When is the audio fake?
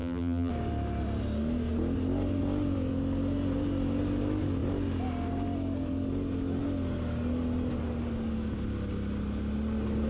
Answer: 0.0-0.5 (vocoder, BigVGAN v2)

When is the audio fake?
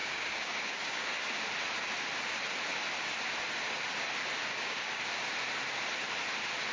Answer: 0.0-1.4 (codec, DAC); 4.5-5.0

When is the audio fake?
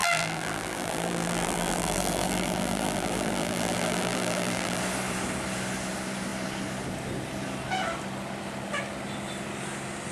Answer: 0.0-4.8 (vocoder, BigVGAN v2)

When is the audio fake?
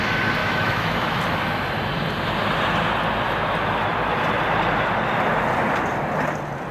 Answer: 0.4-1.2 (autoencoder, DAC-VAE)